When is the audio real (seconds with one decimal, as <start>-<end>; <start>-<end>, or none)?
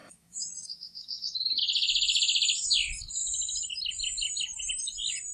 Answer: 1.6-5.3